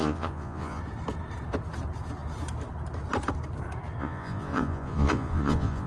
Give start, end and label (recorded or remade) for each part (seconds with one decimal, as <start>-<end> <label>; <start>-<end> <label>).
0.0-0.8 remade; 0.8-4.0 recorded; 4.0-5.9 remade